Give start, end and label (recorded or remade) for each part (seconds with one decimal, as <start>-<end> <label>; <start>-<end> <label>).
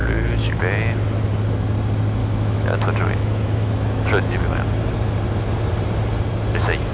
0.0-0.6 remade; 0.6-2.2 recorded; 2.2-4.4 remade; 4.4-6.9 recorded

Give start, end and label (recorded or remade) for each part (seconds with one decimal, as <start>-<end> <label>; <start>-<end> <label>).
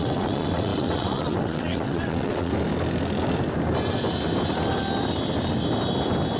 0.0-2.5 remade; 2.5-6.4 recorded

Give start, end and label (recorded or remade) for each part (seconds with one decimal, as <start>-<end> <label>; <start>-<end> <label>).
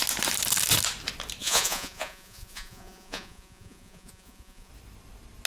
0.0-1.4 recorded; 1.4-4.7 remade; 4.7-5.5 recorded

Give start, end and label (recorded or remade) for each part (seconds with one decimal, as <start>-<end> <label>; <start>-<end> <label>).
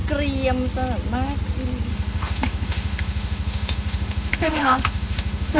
0.0-1.9 recorded; 1.9-5.6 remade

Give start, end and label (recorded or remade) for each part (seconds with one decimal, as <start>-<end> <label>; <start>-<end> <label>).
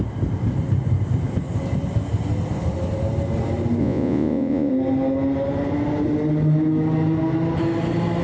0.0-3.8 recorded; 3.8-4.7 remade; 4.7-8.2 recorded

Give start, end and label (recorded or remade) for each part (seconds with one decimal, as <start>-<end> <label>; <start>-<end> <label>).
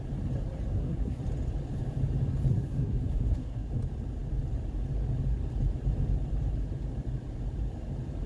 0.0-0.7 recorded; 0.7-1.2 remade; 1.2-2.5 recorded; 2.5-3.7 remade; 3.7-8.3 recorded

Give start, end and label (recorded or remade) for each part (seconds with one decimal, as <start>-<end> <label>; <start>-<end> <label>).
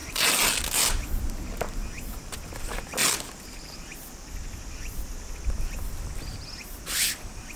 0.0-0.6 remade; 0.6-3.0 recorded; 3.0-5.3 remade; 5.3-7.6 recorded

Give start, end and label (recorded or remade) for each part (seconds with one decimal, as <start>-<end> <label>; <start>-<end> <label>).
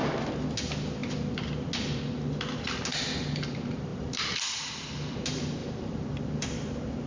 0.0-3.9 recorded; 3.9-4.6 remade; 4.6-5.6 recorded; 5.6-7.1 remade